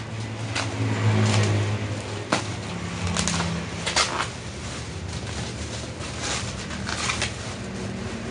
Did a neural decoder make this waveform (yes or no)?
no